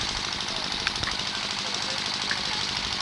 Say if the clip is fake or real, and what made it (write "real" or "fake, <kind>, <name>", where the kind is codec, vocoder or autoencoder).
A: real